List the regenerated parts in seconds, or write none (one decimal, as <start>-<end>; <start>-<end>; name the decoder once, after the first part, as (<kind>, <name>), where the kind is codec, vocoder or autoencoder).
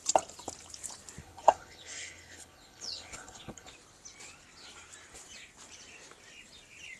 1.2-3.7 (codec, HILCodec)